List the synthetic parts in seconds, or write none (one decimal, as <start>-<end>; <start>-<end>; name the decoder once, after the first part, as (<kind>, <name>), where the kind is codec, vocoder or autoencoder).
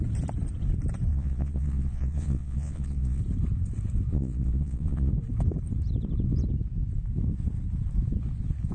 1.1-3.2 (vocoder, Vocos); 4.1-5.1